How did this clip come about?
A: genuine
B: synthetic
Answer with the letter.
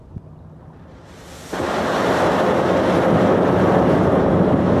A